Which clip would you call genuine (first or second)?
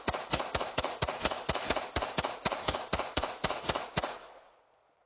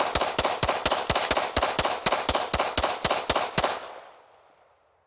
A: second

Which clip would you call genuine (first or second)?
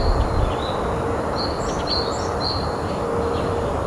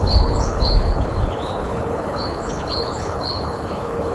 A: first